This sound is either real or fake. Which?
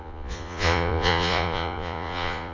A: fake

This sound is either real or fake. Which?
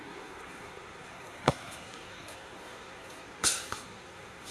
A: fake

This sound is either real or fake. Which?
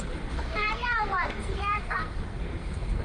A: fake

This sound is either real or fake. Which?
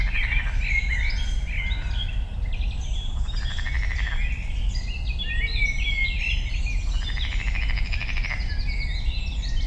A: real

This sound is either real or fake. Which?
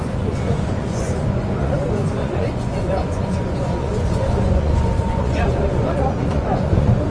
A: fake